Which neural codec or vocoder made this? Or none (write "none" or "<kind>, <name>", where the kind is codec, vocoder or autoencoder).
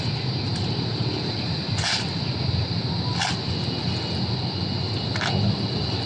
none